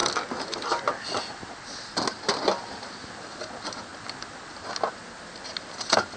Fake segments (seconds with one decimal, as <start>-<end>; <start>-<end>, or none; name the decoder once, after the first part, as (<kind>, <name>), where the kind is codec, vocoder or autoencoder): none